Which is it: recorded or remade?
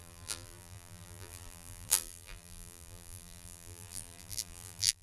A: remade